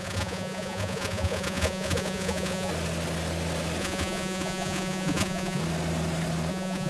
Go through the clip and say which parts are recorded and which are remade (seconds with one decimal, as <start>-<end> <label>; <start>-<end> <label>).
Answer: 0.0-2.7 remade; 2.7-3.8 recorded; 3.8-5.6 remade; 5.6-6.5 recorded; 6.5-6.9 remade